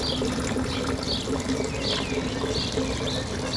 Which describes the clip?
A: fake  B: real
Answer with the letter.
B